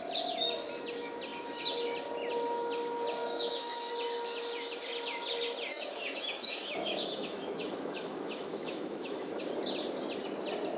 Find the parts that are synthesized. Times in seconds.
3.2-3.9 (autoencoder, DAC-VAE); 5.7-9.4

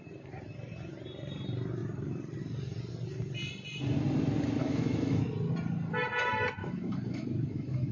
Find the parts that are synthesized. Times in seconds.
4.6-5.2 (autoencoder, DAC-VAE); 6.6-7.9

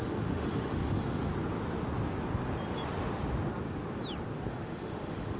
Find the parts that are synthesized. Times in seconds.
0.0-1.3 (autoencoder, DAC-VAE); 4.5-5.4

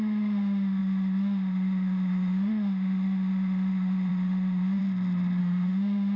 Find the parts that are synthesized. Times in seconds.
0.0-4.8 (autoencoder, DAC-VAE); 5.4-6.2

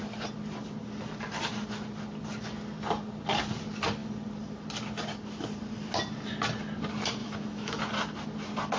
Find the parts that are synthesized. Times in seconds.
7.2-7.8 (autoencoder, DAC-VAE)

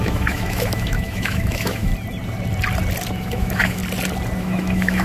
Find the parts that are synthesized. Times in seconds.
0.0-1.9 (autoencoder, DAC-VAE); 3.1-3.8; 4.4-5.0

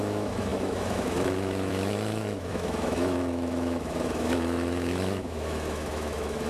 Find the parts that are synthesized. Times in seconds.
0.0-6.5 (autoencoder, DAC-VAE)

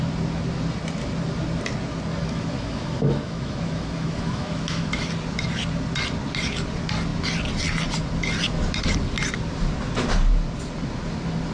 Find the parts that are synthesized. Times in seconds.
2.1-5.1 (autoencoder, DAC-VAE)